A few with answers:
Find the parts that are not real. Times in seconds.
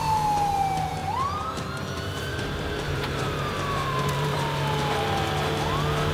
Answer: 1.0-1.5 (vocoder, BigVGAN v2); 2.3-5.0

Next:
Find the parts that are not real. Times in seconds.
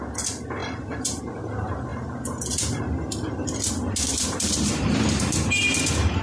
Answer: 0.6-1.2 (vocoder, BigVGAN v2); 4.1-5.5